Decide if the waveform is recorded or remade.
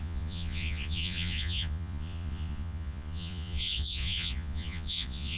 remade